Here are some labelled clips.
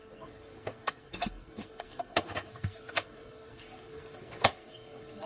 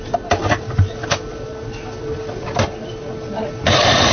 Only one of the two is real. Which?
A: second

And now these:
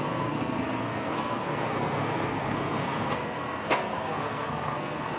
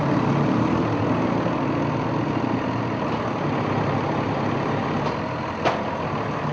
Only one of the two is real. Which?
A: second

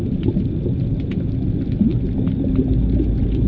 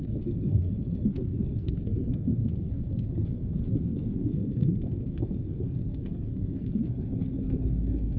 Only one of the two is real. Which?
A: first